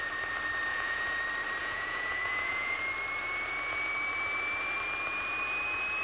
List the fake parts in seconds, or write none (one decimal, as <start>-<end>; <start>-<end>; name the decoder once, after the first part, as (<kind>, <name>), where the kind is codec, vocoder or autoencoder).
0.7-1.2 (vocoder, Vocos); 1.6-2.8